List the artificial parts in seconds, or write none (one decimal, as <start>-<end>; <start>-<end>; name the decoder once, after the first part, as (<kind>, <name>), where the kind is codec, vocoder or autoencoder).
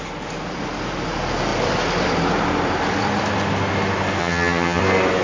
4.2-4.8 (vocoder, HiFi-GAN)